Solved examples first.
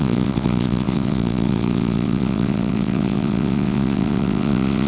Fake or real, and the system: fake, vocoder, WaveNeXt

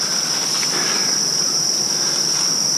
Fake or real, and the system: real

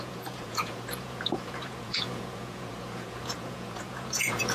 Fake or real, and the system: fake, vocoder, Vocos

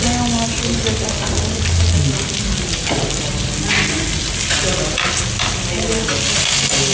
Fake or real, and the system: real